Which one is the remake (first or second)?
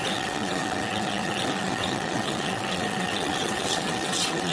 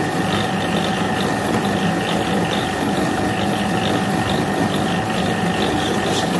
first